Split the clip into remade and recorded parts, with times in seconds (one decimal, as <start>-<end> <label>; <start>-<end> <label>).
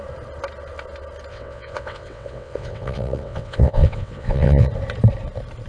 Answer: 0.0-1.3 recorded; 1.3-4.7 remade; 4.7-5.7 recorded